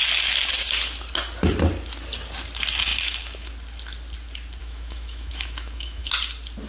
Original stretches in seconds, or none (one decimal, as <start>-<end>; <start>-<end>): 0.0-2.9; 3.5-4.6; 6.1-6.7